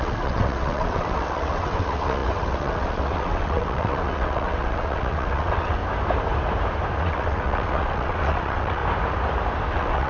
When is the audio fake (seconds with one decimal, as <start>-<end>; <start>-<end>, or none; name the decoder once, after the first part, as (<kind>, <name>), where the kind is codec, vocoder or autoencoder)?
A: 0.0-5.8 (vocoder, WaveNeXt); 7.0-8.8; 9.7-10.1